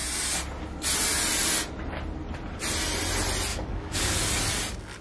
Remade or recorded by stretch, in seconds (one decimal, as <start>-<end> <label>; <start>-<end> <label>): 0.0-3.5 recorded; 3.5-4.2 remade; 4.2-5.0 recorded